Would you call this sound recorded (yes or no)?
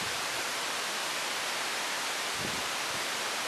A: yes